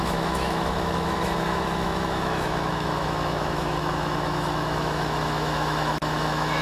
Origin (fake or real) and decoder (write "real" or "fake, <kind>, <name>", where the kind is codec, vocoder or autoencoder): fake, autoencoder, DAC-VAE